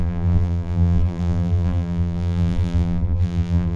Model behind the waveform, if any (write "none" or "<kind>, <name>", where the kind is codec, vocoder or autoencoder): vocoder, BigVGAN v2